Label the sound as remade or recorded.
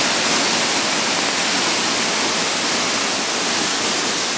recorded